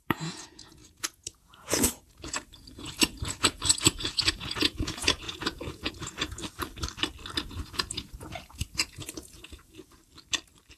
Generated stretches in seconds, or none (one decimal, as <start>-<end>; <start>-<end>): 0.0-6.4; 7.4-10.0